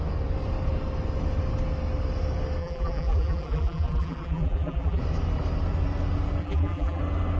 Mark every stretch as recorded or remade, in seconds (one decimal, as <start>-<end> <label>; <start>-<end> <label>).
0.0-2.6 recorded; 2.6-5.0 remade; 5.0-6.4 recorded; 6.4-7.0 remade; 7.0-7.4 recorded